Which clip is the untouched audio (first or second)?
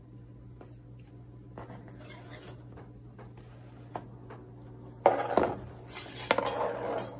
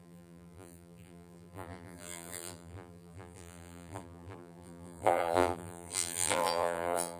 first